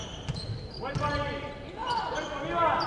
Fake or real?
real